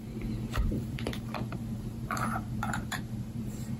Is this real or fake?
fake